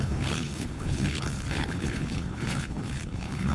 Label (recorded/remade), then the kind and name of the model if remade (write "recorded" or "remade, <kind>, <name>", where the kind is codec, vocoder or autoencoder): remade, codec, HILCodec